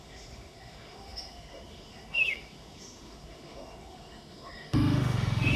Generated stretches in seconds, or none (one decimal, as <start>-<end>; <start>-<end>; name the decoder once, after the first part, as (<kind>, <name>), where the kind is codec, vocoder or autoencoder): 0.0-5.6 (autoencoder, DAC-VAE)